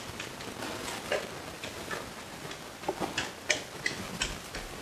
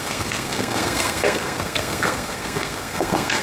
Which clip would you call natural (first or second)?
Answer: first